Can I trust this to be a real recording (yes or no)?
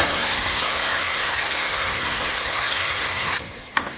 no